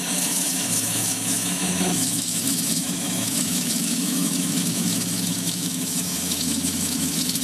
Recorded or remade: remade